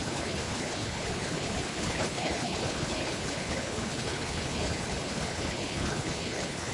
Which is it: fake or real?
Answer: fake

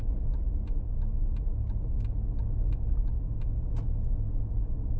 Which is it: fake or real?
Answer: real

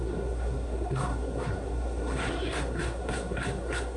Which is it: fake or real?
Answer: fake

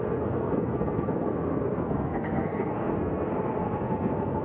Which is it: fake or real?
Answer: fake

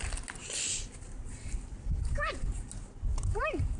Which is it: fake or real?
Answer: real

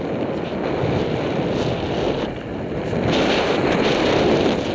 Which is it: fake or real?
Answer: real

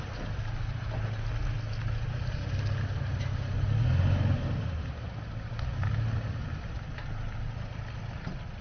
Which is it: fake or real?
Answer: real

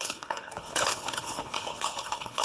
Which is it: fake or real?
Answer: fake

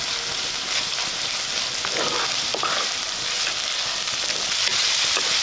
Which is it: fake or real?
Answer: real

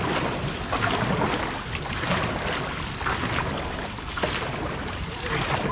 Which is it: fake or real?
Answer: real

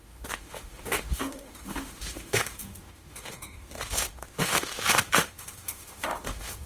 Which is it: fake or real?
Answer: fake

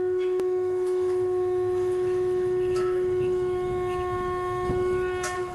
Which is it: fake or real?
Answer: fake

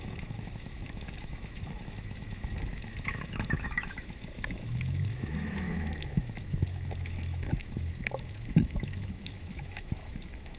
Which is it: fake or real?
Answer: fake